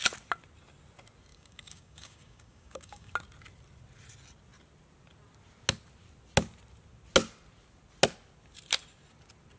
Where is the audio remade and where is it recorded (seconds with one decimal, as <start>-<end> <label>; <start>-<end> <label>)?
0.0-1.3 recorded; 1.3-3.1 remade; 3.1-9.6 recorded